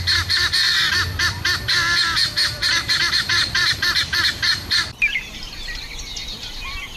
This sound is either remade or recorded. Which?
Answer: remade